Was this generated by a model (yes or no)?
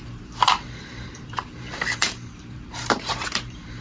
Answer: yes